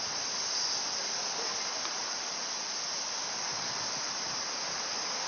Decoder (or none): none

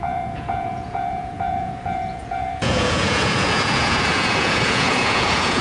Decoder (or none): vocoder, Vocos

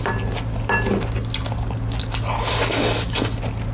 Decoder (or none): none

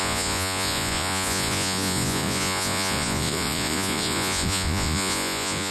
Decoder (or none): vocoder, Vocos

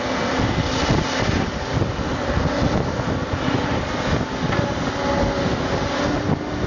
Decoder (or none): none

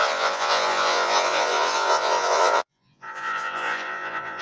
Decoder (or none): vocoder, Vocos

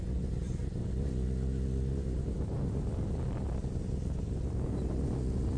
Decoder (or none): none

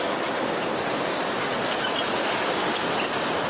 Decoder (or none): none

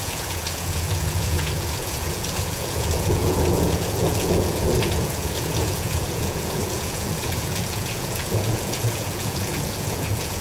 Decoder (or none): vocoder, Vocos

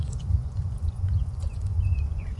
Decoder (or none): vocoder, Vocos